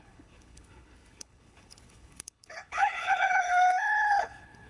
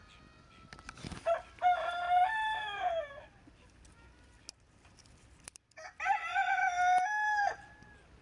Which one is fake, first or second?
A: first